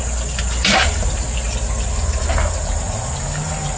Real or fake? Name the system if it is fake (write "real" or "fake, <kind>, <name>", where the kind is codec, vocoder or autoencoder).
real